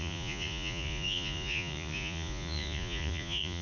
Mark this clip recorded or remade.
remade